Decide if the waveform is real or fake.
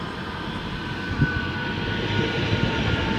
real